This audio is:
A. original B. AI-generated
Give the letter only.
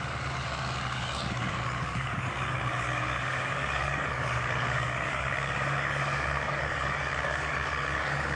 B